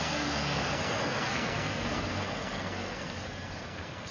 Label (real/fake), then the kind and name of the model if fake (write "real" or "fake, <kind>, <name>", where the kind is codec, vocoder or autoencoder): fake, codec, SNAC